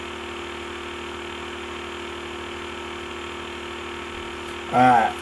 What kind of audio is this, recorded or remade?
recorded